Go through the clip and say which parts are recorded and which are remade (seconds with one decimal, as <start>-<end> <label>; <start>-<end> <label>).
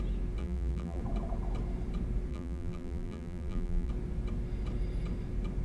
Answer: 0.0-0.4 recorded; 0.4-1.0 remade; 1.0-2.3 recorded; 2.3-3.9 remade; 3.9-5.6 recorded